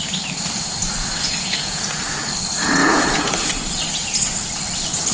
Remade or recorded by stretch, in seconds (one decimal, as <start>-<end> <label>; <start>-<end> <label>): 0.0-0.8 recorded; 0.8-1.8 remade; 1.8-2.8 recorded; 2.8-3.5 remade; 3.5-5.1 recorded